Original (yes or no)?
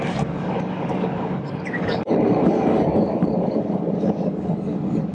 no